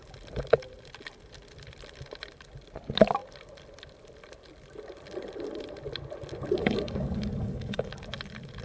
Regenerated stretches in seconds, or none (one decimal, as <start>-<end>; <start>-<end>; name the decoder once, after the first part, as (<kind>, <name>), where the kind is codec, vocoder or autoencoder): 6.6-7.9 (codec, DAC)